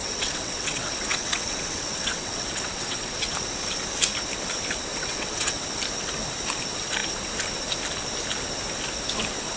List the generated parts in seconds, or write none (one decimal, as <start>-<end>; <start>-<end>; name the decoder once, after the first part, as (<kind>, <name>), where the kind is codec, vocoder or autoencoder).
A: 0.0-3.3 (vocoder, WaveNeXt); 4.9-5.6